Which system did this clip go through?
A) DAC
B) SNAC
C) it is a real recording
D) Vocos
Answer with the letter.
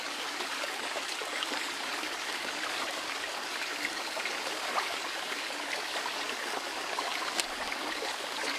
A